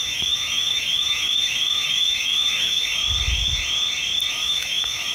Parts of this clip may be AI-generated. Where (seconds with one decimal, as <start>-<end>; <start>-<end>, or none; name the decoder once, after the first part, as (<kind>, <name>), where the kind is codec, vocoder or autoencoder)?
0.0-3.0 (autoencoder, DAC-VAE); 4.3-5.1